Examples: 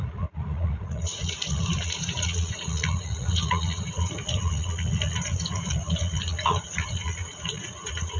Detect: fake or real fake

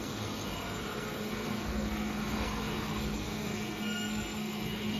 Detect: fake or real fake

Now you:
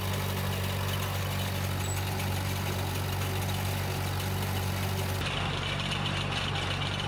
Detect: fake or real real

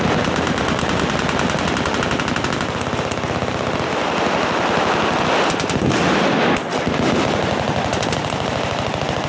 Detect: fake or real real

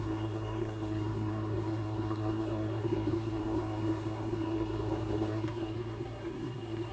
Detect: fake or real fake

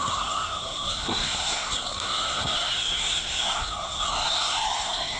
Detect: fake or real fake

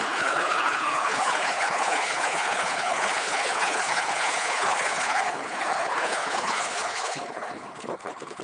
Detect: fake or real fake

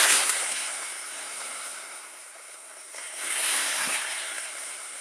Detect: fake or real fake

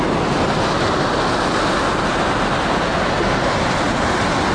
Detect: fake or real real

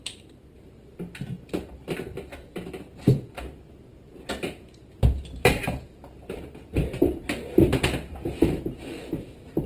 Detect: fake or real fake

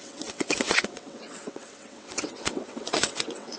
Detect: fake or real fake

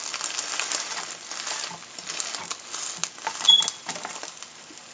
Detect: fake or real real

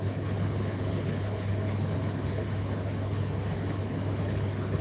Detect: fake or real fake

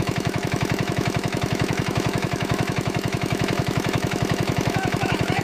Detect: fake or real fake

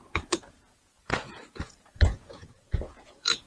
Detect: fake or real fake